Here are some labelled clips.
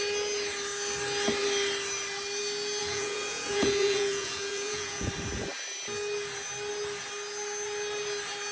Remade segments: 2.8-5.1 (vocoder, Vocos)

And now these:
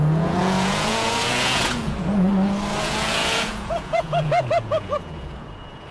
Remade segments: 0.0-2.3 (vocoder, Vocos); 2.8-5.9

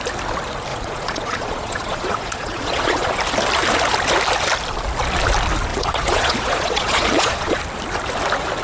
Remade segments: 0.7-3.2 (vocoder, Vocos); 5.7-7.6

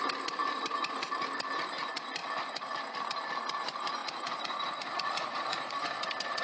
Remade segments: 4.0-5.7 (vocoder, Vocos)